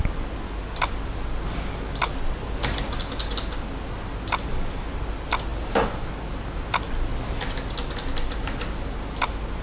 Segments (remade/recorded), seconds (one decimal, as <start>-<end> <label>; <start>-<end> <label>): 0.0-9.6 recorded